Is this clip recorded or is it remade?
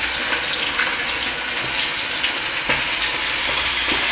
recorded